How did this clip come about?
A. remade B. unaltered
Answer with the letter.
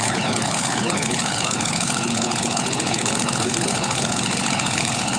A